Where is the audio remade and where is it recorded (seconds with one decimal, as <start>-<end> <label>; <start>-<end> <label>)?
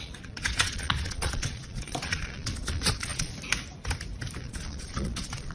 0.0-3.3 remade; 3.3-4.4 recorded; 4.4-5.5 remade